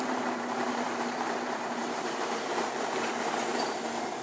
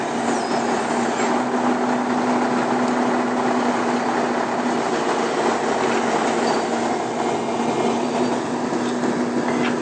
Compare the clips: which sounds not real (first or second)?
first